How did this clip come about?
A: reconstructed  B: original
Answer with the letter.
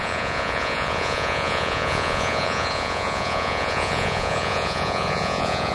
A